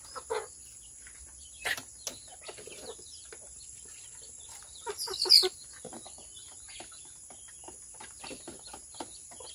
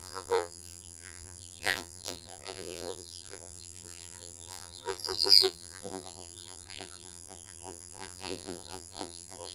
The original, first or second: first